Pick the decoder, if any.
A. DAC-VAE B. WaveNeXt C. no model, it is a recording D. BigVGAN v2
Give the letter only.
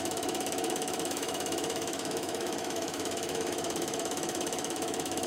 A